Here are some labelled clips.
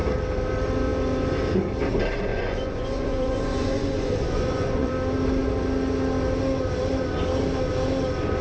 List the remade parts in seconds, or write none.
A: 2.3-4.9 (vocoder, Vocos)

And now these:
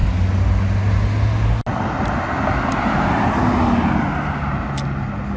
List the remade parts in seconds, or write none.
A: none

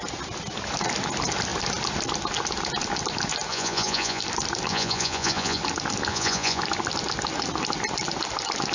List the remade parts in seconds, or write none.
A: 3.5-4.2 (vocoder, Vocos); 4.7-5.6; 6.1-6.6

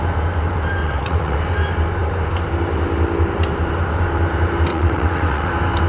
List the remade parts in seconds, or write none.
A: 0.8-1.4 (vocoder, WaveNeXt); 4.7-5.5

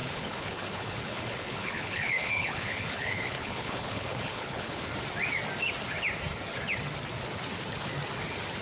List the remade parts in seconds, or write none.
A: 0.0-4.9 (codec, HILCodec)